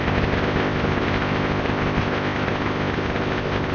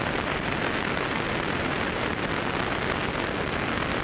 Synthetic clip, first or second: first